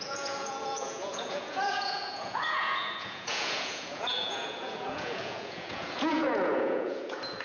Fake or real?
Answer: fake